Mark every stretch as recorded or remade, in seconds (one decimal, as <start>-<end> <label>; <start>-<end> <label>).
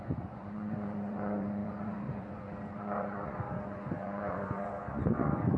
0.0-5.6 remade